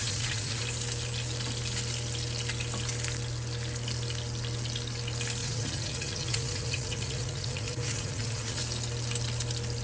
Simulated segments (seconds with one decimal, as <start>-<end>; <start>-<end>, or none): 0.0-0.6; 5.4-8.6

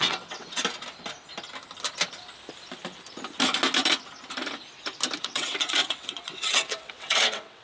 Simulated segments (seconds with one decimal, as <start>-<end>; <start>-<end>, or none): 0.0-0.6; 5.2-7.6

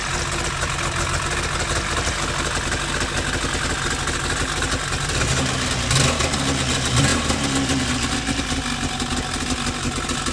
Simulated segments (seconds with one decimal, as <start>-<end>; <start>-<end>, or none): none

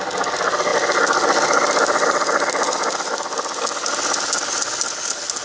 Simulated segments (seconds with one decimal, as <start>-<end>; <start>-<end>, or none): none

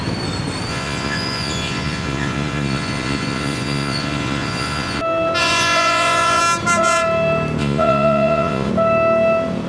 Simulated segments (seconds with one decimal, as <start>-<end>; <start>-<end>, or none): 0.7-5.0; 5.4-6.4; 7.6-8.7